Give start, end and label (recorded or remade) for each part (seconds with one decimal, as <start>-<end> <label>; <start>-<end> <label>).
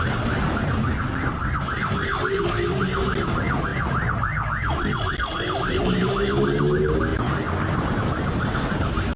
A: 0.0-9.2 recorded